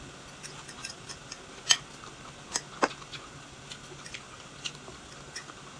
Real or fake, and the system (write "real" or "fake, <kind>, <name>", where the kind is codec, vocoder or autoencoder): real